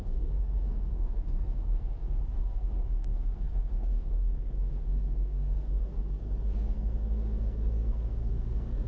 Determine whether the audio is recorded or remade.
remade